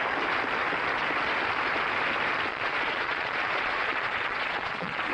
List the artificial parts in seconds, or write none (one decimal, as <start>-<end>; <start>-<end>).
2.5-5.1